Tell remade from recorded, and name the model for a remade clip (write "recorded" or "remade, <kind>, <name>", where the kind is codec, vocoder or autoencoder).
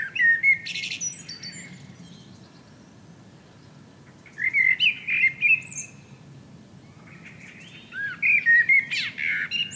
recorded